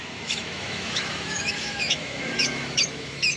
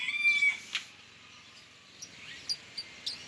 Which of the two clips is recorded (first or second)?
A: second